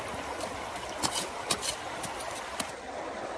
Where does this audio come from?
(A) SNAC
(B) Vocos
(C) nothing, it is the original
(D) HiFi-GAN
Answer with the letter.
C